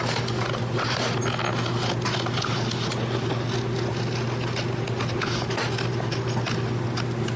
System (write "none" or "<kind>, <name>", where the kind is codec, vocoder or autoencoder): none